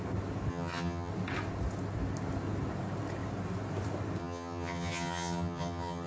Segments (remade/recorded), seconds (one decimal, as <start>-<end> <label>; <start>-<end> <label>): 0.0-0.5 recorded; 0.5-1.1 remade; 1.1-4.2 recorded; 4.2-6.1 remade